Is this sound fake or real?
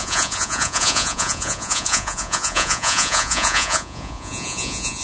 fake